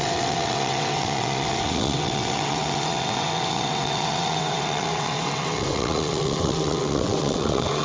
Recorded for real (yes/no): no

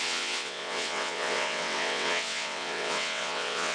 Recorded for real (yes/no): no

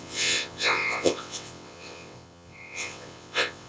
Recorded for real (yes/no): no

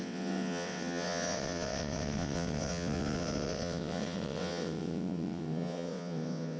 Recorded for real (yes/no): no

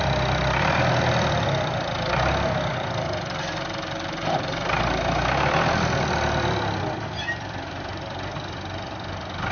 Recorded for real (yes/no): yes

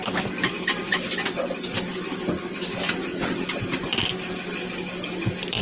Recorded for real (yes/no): yes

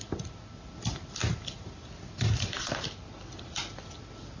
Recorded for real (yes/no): yes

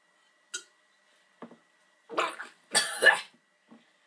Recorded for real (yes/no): yes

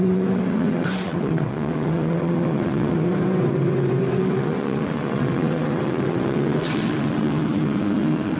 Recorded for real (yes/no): no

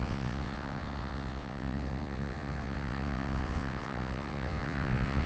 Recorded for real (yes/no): no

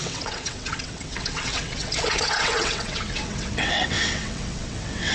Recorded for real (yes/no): no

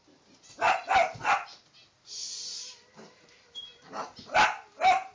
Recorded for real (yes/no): yes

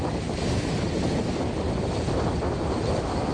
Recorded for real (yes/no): yes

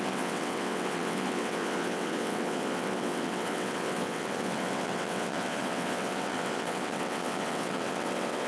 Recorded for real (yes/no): no